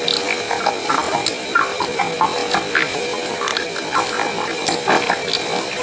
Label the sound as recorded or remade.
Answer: recorded